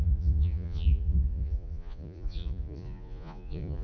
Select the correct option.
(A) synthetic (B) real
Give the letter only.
A